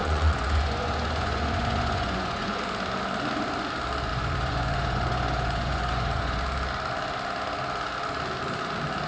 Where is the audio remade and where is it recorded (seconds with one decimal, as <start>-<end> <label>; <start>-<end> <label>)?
0.0-2.6 remade; 2.6-4.1 recorded; 4.1-6.4 remade; 6.4-9.1 recorded